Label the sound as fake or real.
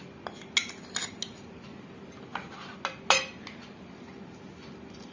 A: real